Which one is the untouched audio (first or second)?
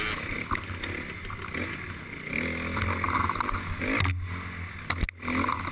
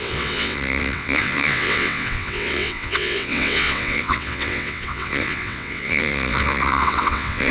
first